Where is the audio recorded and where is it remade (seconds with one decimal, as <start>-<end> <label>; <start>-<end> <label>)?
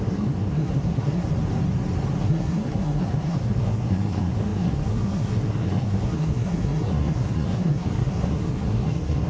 0.0-1.3 remade; 1.3-2.2 recorded; 2.2-9.3 remade